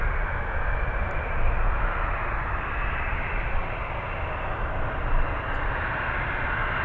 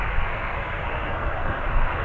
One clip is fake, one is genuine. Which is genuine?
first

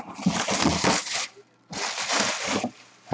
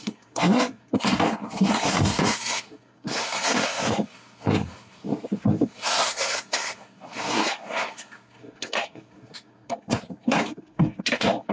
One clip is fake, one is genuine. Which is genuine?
first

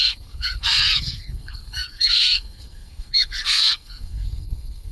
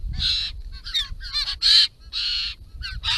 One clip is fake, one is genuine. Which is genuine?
second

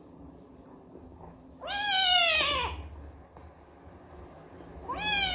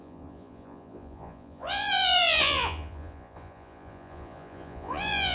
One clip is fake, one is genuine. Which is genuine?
first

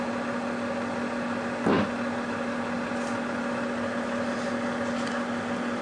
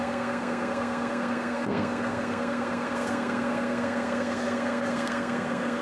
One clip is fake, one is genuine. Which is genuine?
first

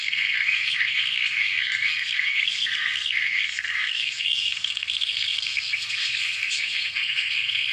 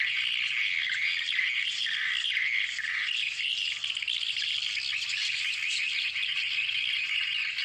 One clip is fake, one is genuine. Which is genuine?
second